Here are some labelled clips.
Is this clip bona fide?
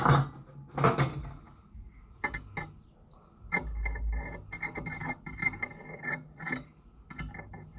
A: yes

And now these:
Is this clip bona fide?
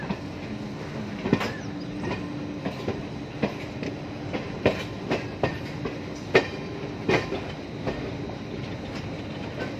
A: yes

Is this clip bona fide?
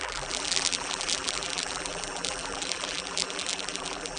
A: no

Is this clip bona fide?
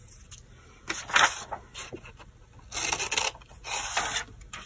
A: yes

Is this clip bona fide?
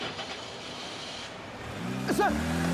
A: no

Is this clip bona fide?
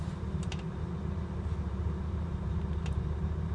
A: no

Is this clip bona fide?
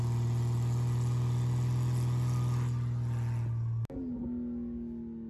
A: yes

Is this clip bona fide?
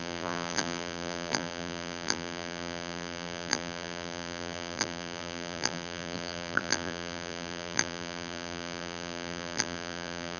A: no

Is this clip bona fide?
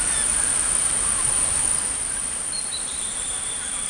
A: no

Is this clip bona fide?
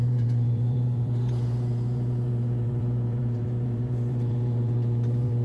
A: no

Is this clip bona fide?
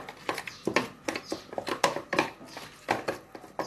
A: yes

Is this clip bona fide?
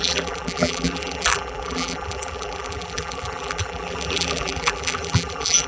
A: no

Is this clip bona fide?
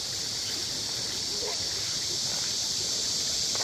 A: yes